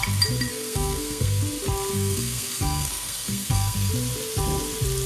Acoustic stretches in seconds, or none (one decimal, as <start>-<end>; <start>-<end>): 0.0-0.5; 1.4-1.9; 3.9-5.1